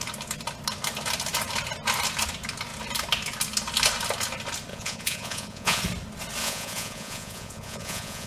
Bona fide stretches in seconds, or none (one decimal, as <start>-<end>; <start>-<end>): 0.0-4.7; 5.8-6.4